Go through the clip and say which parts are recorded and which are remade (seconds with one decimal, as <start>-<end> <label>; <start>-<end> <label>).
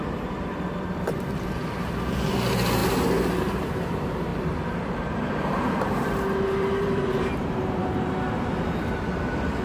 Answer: 0.0-4.3 recorded; 4.3-8.1 remade; 8.1-9.6 recorded